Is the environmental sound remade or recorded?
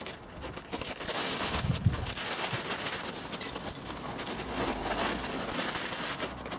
recorded